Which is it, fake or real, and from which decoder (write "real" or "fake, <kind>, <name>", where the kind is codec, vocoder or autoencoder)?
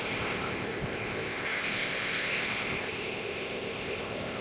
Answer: fake, codec, ZipCodec